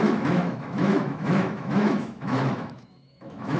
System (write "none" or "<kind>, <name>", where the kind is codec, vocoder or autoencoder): autoencoder, DAC-VAE